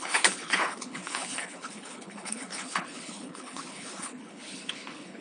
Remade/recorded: remade